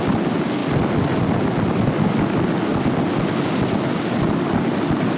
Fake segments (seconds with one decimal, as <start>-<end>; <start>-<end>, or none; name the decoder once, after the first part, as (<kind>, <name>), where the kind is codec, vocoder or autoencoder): 0.6-2.1 (vocoder, BigVGAN v2); 2.7-3.9